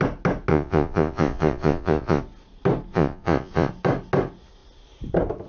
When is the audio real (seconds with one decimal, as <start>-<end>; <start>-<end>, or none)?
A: 0.0-0.5; 2.2-2.9; 3.7-5.5